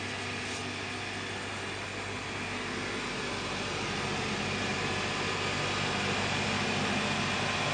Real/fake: real